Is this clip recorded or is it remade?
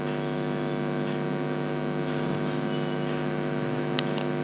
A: recorded